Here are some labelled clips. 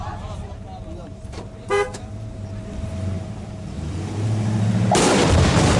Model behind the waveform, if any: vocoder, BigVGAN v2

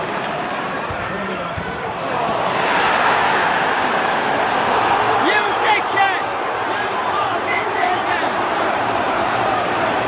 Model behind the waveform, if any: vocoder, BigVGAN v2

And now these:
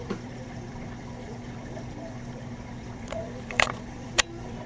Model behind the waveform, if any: vocoder, BigVGAN v2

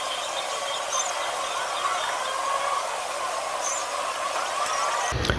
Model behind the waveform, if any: none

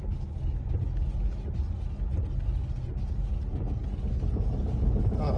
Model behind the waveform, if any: none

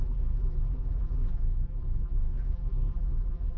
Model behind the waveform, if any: vocoder, BigVGAN v2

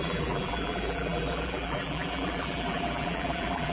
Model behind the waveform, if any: vocoder, BigVGAN v2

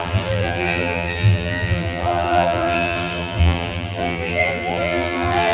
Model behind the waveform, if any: vocoder, BigVGAN v2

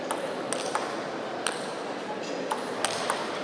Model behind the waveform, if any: none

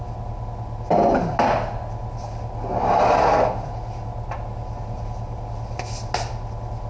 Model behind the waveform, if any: none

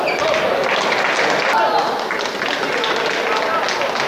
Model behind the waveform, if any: none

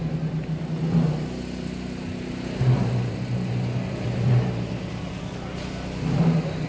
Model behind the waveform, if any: none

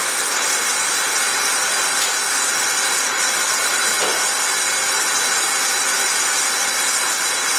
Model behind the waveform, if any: none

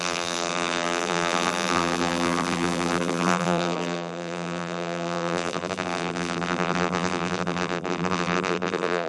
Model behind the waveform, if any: vocoder, BigVGAN v2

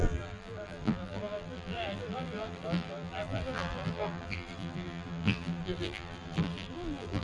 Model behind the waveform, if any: vocoder, BigVGAN v2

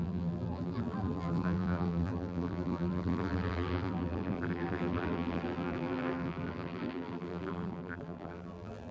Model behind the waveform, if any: vocoder, BigVGAN v2